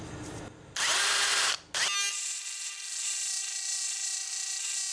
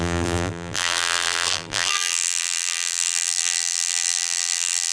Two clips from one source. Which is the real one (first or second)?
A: first